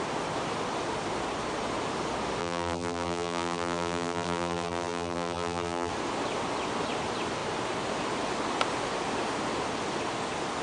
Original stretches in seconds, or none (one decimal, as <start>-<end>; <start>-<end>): 0.0-2.4; 5.9-10.6